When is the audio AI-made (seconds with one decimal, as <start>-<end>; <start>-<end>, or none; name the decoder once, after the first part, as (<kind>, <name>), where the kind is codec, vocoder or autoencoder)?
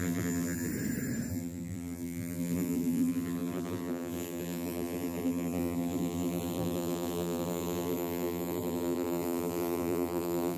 0.0-0.7 (vocoder, BigVGAN v2); 1.3-10.6